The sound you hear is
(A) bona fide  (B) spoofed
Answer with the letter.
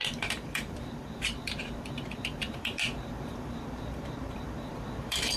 B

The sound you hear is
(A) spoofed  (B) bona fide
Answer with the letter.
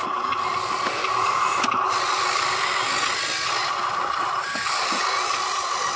B